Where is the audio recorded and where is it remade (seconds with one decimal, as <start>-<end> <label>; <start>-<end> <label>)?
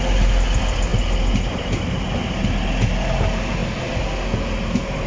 0.0-5.1 recorded